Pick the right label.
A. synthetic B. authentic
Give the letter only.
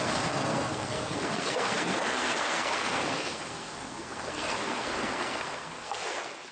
A